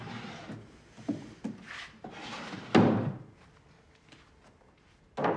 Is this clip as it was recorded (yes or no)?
yes